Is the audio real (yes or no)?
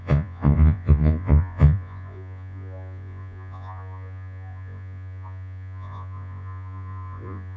no